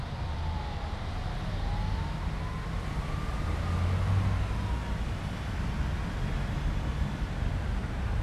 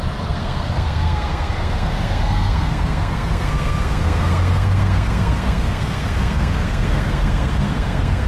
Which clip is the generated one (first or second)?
second